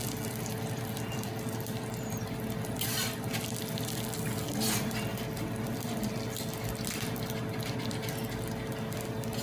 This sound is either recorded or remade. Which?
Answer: recorded